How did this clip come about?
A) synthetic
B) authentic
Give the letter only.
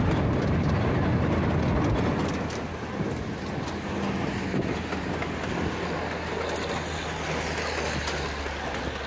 B